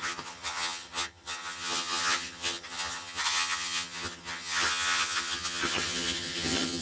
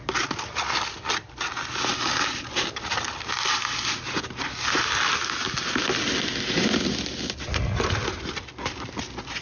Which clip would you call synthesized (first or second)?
first